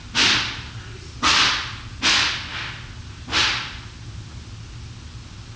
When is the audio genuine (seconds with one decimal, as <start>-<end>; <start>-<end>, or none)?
0.0-5.6